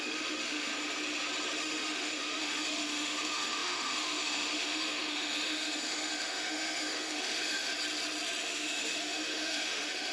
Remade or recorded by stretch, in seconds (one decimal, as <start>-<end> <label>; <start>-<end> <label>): 0.0-0.7 remade; 0.7-1.6 recorded; 1.6-7.7 remade; 7.7-8.4 recorded; 8.4-10.1 remade